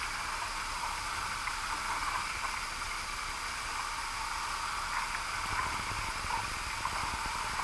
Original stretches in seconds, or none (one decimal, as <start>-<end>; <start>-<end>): 3.7-5.6